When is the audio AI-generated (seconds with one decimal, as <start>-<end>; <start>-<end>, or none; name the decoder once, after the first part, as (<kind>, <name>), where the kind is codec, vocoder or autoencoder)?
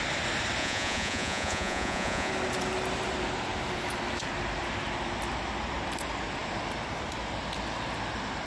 0.6-2.3 (vocoder, Vocos)